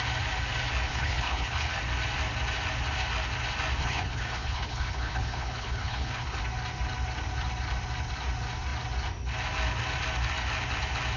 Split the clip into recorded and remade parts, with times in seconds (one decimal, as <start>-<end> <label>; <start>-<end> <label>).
0.0-0.9 recorded; 0.9-1.8 remade; 1.8-3.8 recorded; 3.8-6.4 remade; 6.4-11.2 recorded